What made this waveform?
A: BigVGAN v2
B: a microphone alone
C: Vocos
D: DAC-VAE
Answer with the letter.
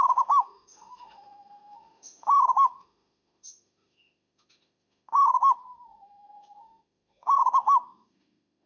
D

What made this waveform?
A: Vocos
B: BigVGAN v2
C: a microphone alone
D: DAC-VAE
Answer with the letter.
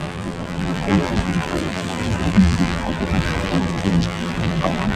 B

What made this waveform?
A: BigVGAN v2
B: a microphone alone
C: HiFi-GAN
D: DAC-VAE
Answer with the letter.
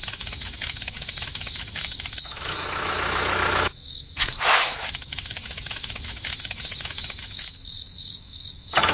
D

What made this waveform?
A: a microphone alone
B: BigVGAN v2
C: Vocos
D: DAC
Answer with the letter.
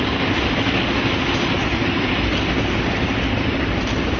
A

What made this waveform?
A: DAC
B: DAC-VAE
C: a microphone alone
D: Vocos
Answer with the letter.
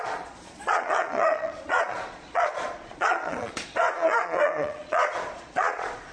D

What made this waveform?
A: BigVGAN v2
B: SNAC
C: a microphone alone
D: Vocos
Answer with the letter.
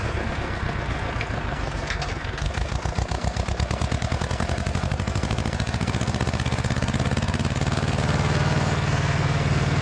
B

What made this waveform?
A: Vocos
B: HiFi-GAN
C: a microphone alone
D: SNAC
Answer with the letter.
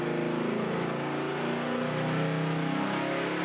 C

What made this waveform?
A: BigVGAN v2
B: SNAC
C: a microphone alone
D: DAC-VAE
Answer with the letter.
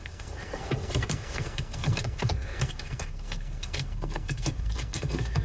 B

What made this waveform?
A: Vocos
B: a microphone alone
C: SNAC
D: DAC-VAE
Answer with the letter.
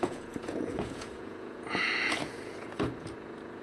A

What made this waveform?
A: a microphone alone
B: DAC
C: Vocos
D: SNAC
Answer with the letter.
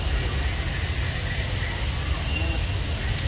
A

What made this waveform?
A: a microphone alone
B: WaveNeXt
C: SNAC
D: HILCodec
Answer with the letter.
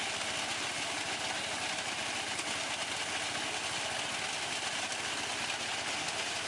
A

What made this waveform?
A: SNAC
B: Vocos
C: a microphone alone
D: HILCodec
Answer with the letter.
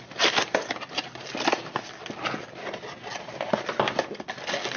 C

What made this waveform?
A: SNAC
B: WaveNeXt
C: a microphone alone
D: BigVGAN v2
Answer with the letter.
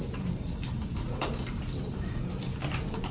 D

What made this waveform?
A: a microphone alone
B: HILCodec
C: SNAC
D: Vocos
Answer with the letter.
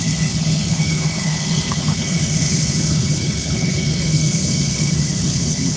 B